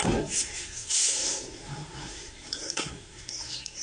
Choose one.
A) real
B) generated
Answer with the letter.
B